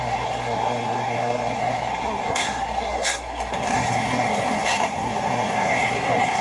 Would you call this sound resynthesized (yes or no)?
yes